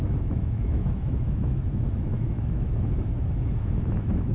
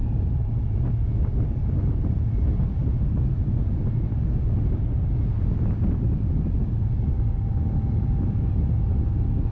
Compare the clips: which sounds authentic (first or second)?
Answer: second